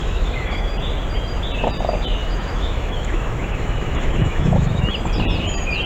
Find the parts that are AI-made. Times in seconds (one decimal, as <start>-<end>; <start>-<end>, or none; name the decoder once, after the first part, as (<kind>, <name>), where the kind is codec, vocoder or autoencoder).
0.0-0.7 (autoencoder, DAC-VAE); 2.2-4.9

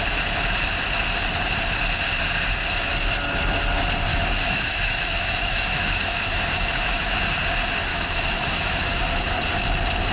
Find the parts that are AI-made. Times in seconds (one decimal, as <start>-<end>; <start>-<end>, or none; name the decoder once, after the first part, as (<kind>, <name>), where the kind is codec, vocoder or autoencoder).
4.1-7.2 (autoencoder, DAC-VAE); 7.9-9.0

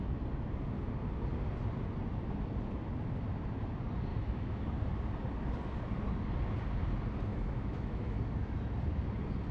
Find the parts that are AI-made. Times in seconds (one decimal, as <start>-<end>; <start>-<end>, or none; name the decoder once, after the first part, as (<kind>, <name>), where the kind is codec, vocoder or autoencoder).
4.1-4.7 (autoencoder, DAC-VAE); 7.3-8.2

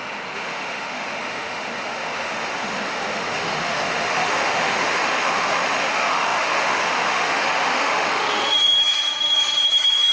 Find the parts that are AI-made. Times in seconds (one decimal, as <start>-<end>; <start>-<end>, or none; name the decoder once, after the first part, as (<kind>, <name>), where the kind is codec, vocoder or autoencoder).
0.0-10.1 (autoencoder, DAC-VAE)

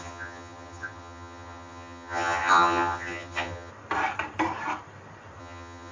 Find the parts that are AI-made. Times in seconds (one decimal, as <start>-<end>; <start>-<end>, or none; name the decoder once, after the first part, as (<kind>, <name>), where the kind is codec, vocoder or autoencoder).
0.0-3.7 (vocoder, HiFi-GAN); 5.4-5.9

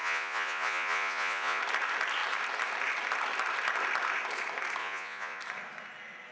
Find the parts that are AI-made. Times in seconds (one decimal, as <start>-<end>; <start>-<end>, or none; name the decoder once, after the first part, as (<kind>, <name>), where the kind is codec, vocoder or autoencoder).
0.0-1.6 (vocoder, Vocos); 4.8-5.4

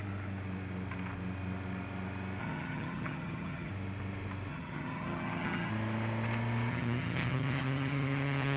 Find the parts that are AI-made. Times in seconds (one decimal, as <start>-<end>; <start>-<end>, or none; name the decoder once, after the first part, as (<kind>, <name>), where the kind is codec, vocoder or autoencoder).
2.4-3.7 (vocoder, HiFi-GAN); 4.5-5.7; 6.7-8.6

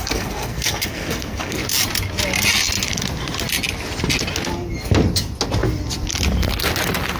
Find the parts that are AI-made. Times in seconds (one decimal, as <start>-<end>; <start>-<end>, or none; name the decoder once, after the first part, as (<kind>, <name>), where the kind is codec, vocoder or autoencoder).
0.0-1.6 (codec, SNAC)